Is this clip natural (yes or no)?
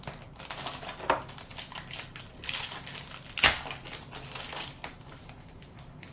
yes